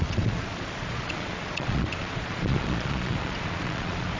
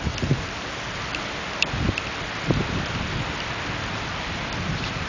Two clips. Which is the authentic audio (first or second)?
second